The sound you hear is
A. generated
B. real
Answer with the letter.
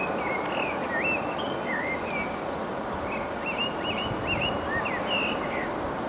B